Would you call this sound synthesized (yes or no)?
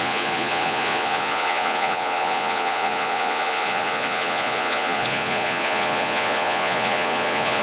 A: yes